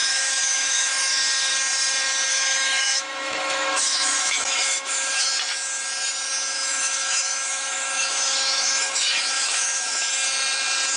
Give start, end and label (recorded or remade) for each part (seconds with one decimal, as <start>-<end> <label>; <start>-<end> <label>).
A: 0.0-1.2 remade; 1.2-2.3 recorded; 2.3-5.3 remade; 5.3-6.7 recorded; 6.7-10.0 remade; 10.0-11.0 recorded